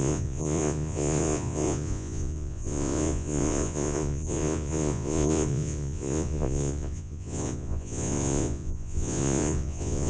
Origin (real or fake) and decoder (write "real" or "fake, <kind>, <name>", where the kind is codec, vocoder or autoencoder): fake, vocoder, Vocos